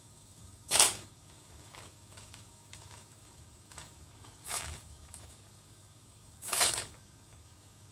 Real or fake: fake